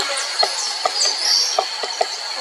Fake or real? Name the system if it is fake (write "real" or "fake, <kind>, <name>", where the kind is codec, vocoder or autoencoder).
real